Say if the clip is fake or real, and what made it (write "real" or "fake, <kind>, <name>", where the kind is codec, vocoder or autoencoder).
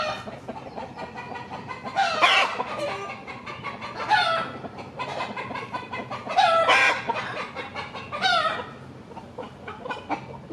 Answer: real